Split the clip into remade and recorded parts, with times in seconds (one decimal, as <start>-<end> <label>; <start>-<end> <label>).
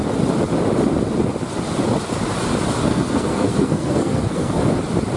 0.0-2.8 recorded; 2.8-4.6 remade; 4.6-5.2 recorded